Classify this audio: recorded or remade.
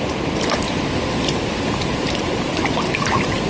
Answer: recorded